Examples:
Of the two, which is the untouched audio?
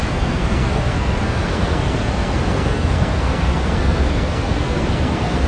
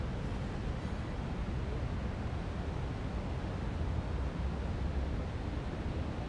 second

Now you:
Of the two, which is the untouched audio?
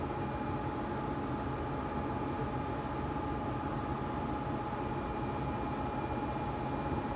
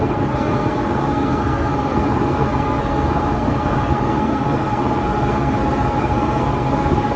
first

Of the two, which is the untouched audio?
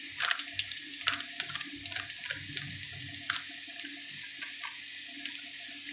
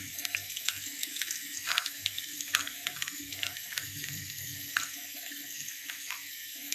first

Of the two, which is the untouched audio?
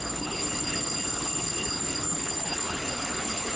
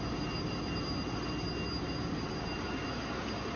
second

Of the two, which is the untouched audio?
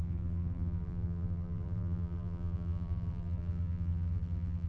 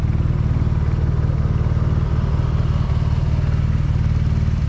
second